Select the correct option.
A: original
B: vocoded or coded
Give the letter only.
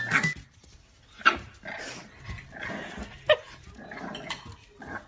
A